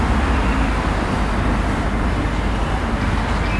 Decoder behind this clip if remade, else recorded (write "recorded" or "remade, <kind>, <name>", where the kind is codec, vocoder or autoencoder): recorded